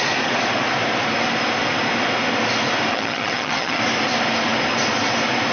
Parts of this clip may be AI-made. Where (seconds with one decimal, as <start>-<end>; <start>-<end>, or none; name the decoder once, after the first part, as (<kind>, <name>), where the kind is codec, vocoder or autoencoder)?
2.9-3.8 (vocoder, HiFi-GAN)